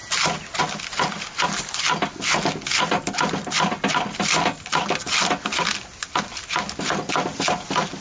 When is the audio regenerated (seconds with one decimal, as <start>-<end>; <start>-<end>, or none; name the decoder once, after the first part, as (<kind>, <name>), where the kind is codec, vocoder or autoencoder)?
none